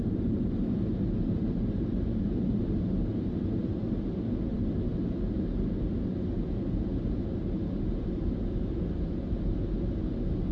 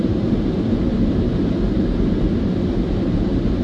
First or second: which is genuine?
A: first